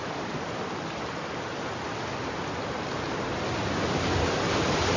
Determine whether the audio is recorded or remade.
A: recorded